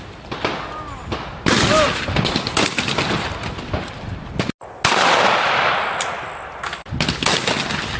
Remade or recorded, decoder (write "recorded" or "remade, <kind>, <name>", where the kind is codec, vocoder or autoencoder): recorded